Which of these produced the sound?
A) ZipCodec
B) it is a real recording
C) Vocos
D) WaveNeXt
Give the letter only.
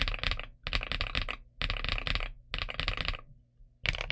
B